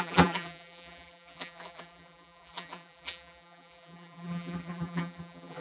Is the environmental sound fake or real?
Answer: fake